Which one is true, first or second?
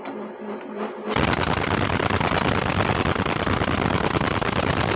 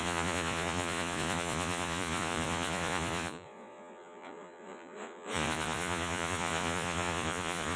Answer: first